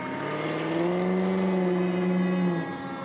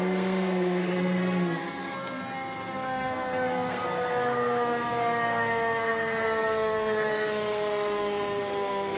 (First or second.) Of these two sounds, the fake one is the second